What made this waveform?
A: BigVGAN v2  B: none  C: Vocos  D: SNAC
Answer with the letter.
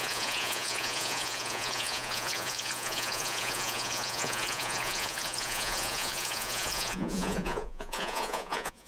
C